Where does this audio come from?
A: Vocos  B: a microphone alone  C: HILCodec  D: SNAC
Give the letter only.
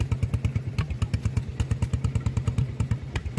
B